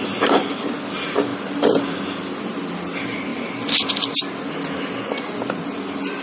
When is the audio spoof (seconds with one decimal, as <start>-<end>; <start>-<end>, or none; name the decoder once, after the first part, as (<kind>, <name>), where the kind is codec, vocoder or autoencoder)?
none